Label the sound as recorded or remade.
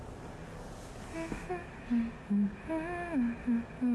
recorded